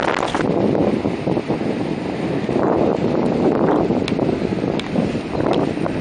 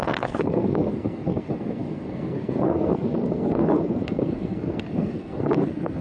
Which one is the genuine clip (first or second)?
first